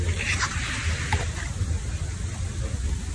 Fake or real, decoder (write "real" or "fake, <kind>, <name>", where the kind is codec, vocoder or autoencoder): real